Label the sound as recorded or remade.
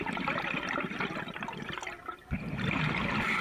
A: recorded